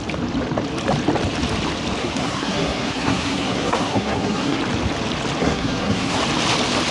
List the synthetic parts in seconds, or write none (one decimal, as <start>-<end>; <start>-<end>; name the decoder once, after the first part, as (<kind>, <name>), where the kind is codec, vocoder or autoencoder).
2.0-4.6 (codec, SNAC); 5.4-6.2